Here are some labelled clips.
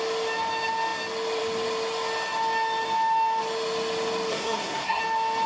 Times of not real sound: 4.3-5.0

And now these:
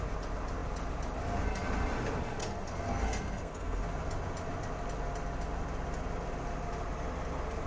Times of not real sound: 2.4-3.8

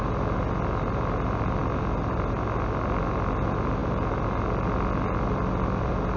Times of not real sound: none